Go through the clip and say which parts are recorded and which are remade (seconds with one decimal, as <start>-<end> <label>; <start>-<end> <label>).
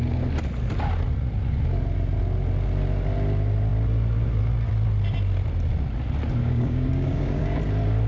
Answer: 0.0-6.4 recorded; 6.4-7.6 remade; 7.6-8.1 recorded